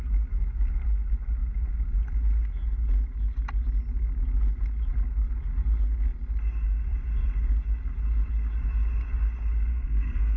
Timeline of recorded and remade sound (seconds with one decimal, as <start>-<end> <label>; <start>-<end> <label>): 0.0-9.7 recorded; 9.7-10.4 remade